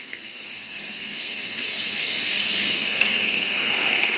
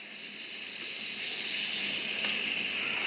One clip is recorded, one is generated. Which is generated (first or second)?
first